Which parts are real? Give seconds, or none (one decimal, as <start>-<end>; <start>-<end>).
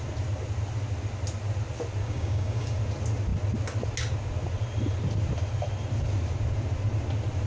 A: 0.0-2.0; 2.8-7.5